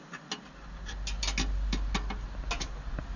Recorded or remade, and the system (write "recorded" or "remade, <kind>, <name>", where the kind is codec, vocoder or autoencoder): recorded